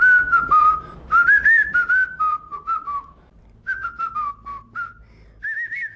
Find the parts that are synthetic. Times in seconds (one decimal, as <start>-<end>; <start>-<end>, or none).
none